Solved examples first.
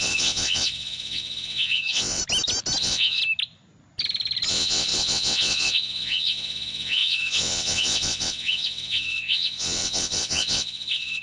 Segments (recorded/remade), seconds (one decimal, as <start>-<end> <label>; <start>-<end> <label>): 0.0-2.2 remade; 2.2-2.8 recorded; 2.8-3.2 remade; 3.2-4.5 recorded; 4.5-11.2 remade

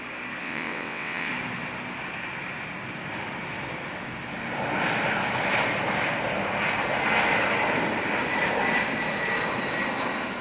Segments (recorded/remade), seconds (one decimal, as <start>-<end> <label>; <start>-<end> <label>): 0.0-0.4 recorded; 0.4-1.3 remade; 1.3-10.4 recorded

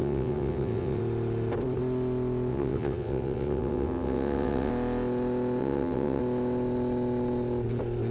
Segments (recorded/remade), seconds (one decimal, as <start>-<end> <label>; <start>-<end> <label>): 0.0-1.0 remade; 1.0-2.5 recorded; 2.5-4.7 remade; 4.7-5.6 recorded; 5.6-6.2 remade; 6.2-8.1 recorded

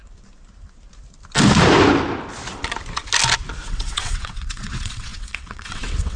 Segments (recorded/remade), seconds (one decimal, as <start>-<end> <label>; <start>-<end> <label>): 0.0-3.7 recorded; 3.7-6.2 remade

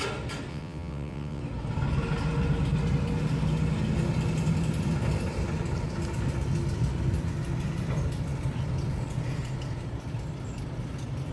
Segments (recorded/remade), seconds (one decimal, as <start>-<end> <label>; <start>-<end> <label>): 0.0-0.5 recorded; 0.5-1.4 remade; 1.4-11.3 recorded

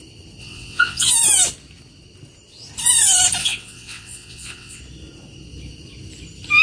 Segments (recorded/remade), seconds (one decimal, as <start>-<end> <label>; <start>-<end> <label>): 0.0-0.4 recorded; 0.4-1.1 remade; 1.1-3.4 recorded; 3.4-4.8 remade; 4.8-6.6 recorded

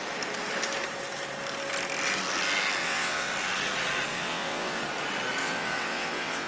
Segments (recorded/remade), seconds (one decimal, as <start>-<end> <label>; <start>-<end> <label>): 0.0-2.8 recorded; 2.8-3.3 remade; 3.3-4.1 recorded; 4.1-4.8 remade; 4.8-5.4 recorded; 5.4-6.5 remade